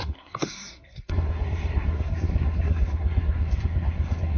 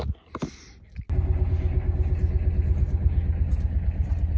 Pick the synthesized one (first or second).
first